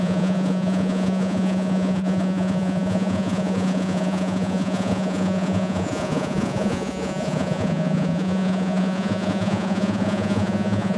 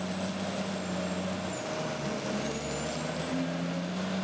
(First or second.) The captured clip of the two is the second